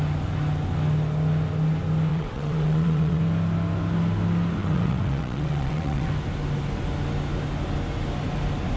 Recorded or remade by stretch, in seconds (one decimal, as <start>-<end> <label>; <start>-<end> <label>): 0.0-2.1 recorded; 2.1-3.2 remade; 3.2-4.6 recorded; 4.6-6.1 remade; 6.1-8.8 recorded